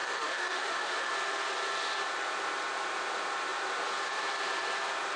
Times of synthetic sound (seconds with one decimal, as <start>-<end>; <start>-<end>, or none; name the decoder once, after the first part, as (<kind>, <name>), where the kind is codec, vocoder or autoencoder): 0.0-1.1 (autoencoder, DAC-VAE)